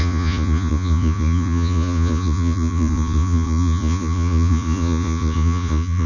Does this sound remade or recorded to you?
remade